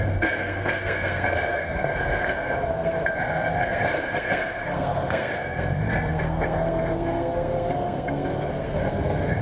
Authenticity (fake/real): fake